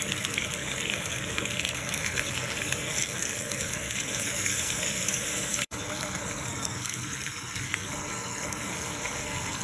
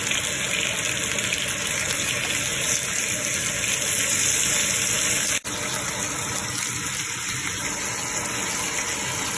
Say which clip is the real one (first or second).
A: second